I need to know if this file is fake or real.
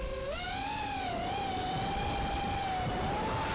real